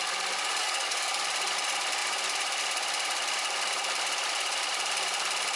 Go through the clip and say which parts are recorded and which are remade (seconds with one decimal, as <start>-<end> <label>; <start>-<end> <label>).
0.0-0.6 recorded; 0.6-1.2 remade; 1.2-5.6 recorded